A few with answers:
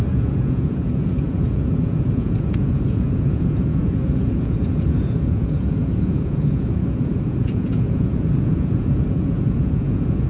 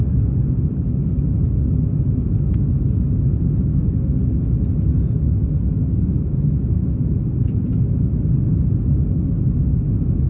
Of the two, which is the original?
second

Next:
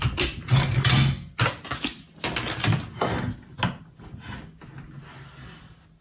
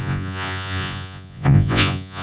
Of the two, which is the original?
first